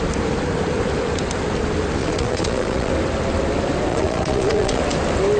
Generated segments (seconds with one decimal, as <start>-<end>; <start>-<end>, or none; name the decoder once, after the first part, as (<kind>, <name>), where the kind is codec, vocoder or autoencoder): 2.0-2.9 (vocoder, Vocos); 3.9-4.8